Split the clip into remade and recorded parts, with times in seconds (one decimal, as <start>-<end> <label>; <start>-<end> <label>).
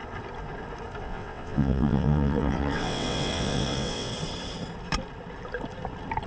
0.0-1.0 recorded; 1.0-4.1 remade; 4.1-6.3 recorded